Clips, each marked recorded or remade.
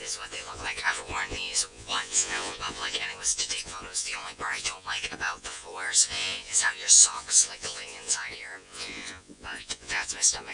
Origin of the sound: remade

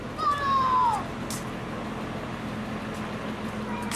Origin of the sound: recorded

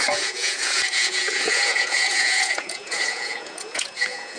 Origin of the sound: remade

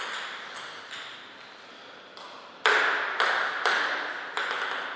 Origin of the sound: recorded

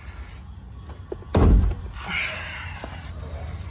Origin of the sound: recorded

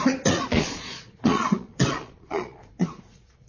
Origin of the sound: remade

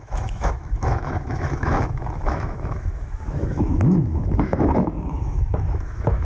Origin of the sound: remade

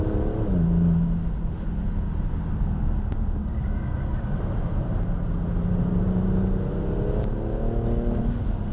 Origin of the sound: recorded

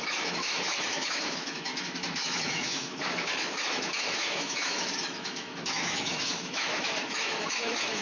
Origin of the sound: remade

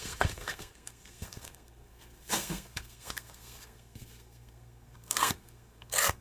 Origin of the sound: remade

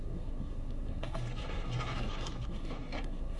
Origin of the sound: remade